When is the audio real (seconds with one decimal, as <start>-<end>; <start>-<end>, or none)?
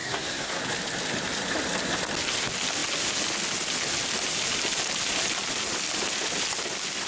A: 0.6-7.1